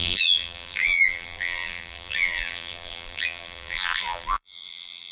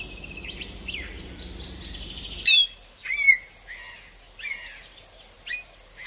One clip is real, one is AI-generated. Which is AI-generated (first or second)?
first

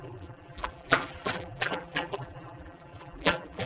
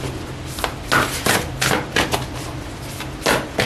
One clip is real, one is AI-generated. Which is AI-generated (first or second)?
first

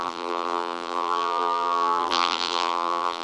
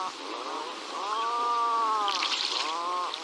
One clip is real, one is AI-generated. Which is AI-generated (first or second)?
first